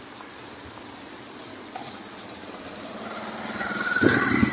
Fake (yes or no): no